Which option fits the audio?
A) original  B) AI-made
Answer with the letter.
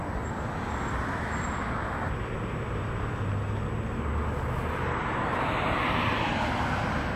A